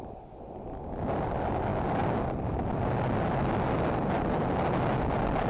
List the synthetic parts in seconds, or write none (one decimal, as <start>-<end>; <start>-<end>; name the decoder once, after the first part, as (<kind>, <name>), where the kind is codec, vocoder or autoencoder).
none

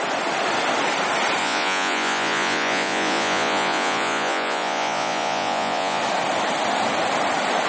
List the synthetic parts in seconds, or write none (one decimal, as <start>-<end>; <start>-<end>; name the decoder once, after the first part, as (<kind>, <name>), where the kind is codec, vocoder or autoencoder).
1.4-6.0 (vocoder, Vocos)

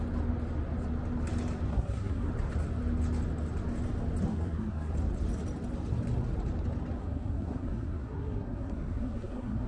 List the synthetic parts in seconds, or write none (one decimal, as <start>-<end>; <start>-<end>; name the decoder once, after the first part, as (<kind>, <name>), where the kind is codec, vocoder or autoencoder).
1.7-2.3 (codec, SNAC); 4.3-4.9; 7.0-9.7

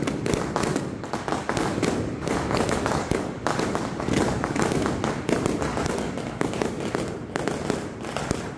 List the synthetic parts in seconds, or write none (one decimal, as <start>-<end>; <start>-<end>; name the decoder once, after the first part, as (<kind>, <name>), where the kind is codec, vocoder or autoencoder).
0.7-4.9 (codec, DAC); 5.7-6.9